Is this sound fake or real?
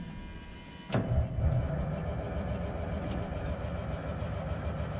real